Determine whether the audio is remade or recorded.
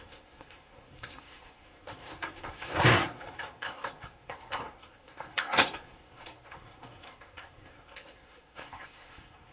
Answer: remade